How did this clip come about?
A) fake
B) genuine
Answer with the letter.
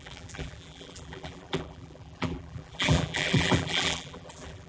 A